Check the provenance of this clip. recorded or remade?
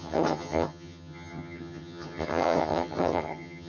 remade